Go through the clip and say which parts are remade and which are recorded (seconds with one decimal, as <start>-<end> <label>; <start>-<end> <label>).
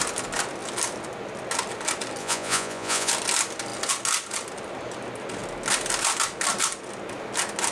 0.0-2.2 recorded; 2.2-3.1 remade; 3.1-7.7 recorded